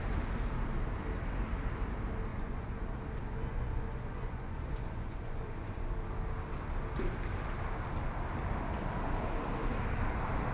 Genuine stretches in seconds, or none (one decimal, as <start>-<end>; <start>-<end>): 0.0-2.3; 2.8-3.2; 5.9-10.5